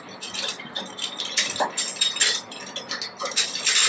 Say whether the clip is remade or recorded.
recorded